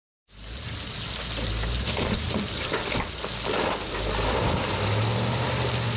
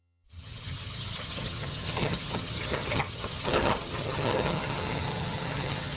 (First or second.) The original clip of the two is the first